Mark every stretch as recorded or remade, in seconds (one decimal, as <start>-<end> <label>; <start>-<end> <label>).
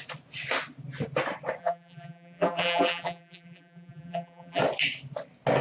0.0-1.6 recorded; 1.6-4.6 remade; 4.6-5.6 recorded